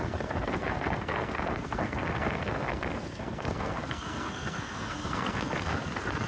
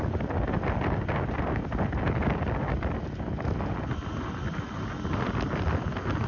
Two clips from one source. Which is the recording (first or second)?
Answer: second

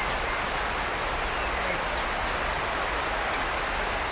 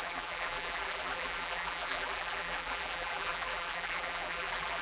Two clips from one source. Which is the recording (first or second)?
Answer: first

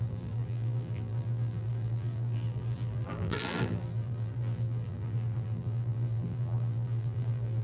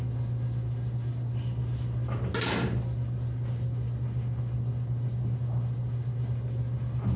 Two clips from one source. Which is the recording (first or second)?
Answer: second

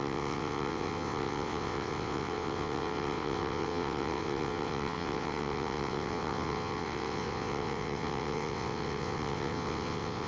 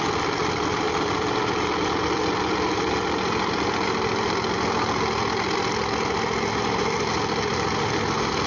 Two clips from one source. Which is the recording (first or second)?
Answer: second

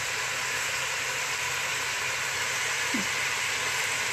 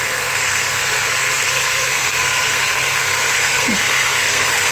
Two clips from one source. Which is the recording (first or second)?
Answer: first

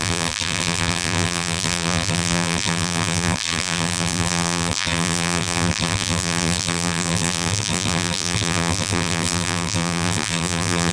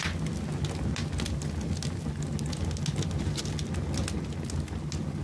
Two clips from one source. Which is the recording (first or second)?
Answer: second